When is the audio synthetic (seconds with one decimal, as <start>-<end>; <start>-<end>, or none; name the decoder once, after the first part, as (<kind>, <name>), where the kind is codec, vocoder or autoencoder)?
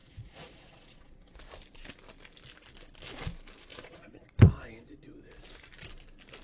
0.0-1.4 (vocoder, Vocos); 3.7-4.5